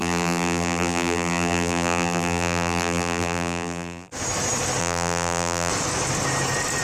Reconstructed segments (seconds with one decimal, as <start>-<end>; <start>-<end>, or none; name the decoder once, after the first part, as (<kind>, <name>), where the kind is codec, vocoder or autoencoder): 0.0-4.1 (vocoder, BigVGAN v2); 4.8-5.7